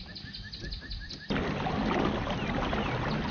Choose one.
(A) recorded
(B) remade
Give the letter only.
A